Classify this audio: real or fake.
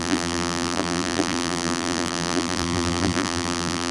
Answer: fake